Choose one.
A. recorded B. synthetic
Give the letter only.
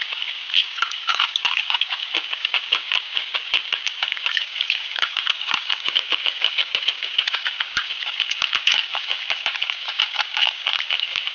B